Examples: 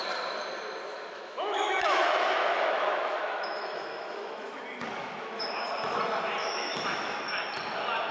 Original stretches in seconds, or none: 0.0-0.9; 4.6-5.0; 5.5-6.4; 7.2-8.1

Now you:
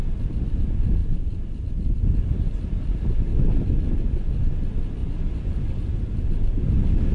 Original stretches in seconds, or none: 0.0-7.1

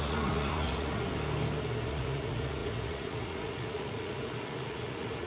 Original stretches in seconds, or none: 1.1-1.9

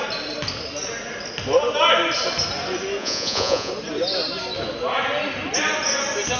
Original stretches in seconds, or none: 0.0-3.0; 3.7-6.4